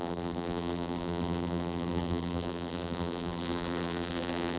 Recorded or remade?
remade